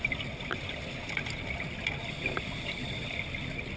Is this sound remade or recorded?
recorded